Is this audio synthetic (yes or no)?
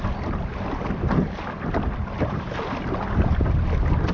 no